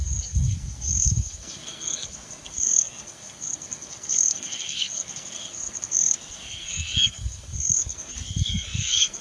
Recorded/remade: remade